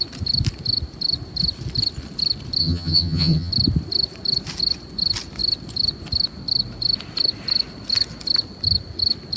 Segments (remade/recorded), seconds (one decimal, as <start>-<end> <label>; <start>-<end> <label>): 0.0-2.6 recorded; 2.6-3.5 remade; 3.5-9.4 recorded